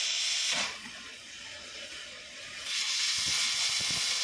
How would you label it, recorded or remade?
remade